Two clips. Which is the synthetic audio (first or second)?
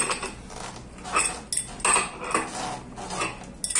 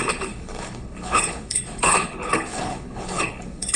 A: second